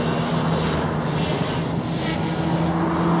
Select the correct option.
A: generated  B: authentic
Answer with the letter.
B